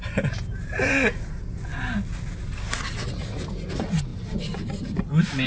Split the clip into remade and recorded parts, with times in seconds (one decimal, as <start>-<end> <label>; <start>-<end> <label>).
0.0-5.5 recorded